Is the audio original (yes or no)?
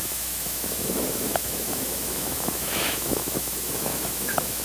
no